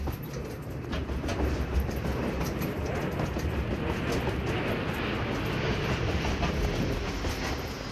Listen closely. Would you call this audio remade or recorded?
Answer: recorded